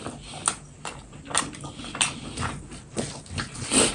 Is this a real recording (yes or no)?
yes